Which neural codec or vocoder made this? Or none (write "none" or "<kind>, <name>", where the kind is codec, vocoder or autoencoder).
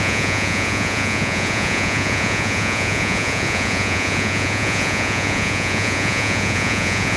vocoder, Vocos